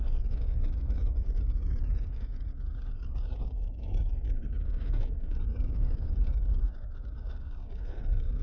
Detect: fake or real fake